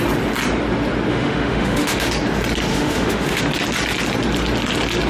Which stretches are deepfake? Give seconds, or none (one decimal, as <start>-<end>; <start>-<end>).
1.1-2.1; 2.7-3.4